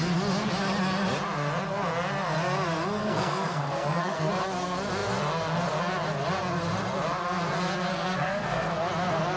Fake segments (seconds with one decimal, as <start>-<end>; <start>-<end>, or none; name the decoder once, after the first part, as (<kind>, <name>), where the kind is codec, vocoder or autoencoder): 3.0-4.3 (codec, SNAC); 7.9-8.7